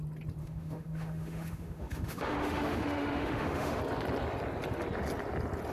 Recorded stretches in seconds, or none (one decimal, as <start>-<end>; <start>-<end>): 0.0-0.4; 3.8-5.7